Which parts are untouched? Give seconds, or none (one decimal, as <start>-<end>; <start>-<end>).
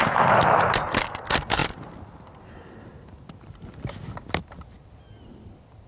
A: 0.0-5.9